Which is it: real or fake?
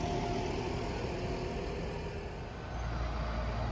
real